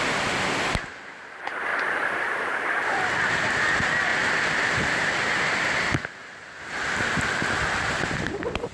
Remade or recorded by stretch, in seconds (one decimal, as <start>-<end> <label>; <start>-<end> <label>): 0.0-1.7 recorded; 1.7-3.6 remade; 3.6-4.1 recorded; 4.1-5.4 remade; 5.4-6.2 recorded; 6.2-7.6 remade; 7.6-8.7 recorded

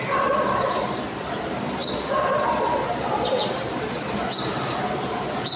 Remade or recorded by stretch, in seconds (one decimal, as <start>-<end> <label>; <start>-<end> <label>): 0.0-5.6 recorded

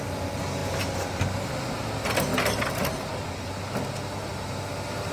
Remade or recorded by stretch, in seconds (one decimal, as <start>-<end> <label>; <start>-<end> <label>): 0.0-5.1 recorded

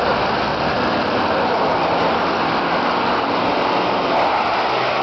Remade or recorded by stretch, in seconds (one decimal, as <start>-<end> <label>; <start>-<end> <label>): 0.0-0.5 recorded; 0.5-3.4 remade; 3.4-5.0 recorded

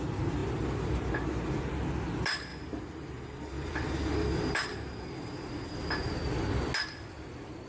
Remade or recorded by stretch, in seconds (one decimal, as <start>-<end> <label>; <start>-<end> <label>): 0.0-2.5 recorded; 2.5-3.9 remade; 3.9-7.7 recorded